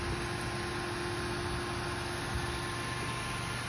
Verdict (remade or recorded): recorded